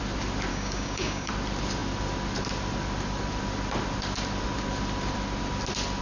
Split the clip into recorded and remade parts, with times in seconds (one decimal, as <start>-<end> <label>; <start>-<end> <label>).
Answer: 0.0-0.5 recorded; 0.5-1.3 remade; 1.3-6.0 recorded